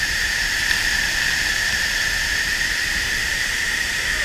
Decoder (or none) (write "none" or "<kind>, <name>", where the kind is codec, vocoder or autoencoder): vocoder, BigVGAN v2